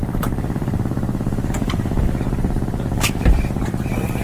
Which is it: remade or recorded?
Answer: remade